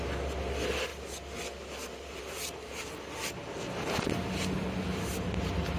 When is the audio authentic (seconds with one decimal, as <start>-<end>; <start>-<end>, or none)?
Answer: 0.0-5.8